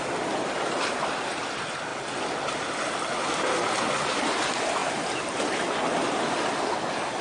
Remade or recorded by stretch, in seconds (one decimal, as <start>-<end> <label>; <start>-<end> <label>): 0.0-7.2 recorded